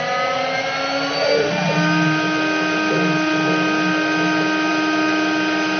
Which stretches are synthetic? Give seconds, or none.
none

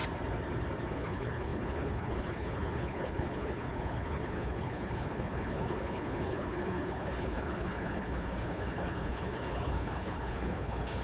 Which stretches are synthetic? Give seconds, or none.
0.9-11.0 (codec, HILCodec)

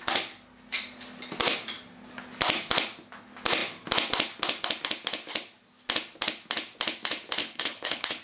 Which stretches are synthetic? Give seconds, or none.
7.4-8.2 (codec, HILCodec)

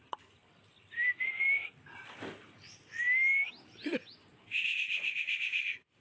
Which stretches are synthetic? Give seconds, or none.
none

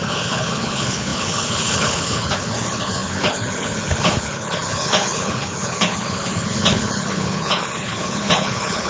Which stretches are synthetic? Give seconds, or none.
0.0-8.9 (codec, HILCodec)

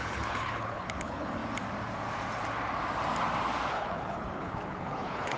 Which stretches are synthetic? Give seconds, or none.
0.0-1.4 (codec, HILCodec); 3.7-5.4

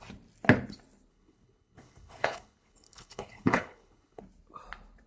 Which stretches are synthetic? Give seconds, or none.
1.1-4.2 (codec, HILCodec)